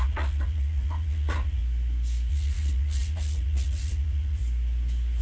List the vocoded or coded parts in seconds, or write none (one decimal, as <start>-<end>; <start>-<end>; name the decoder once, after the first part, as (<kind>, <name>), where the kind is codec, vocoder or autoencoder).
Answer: 0.0-1.6 (vocoder, Vocos); 2.3-4.4